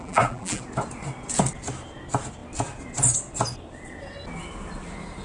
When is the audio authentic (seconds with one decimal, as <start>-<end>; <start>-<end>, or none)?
0.6-5.2